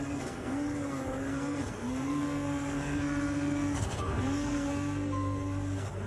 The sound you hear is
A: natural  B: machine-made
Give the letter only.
B